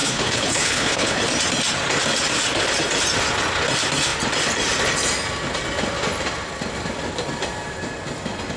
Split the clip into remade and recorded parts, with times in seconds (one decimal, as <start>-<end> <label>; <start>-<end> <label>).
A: 0.0-1.2 remade; 1.2-8.6 recorded